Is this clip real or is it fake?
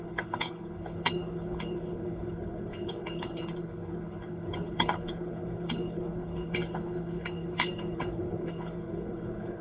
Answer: fake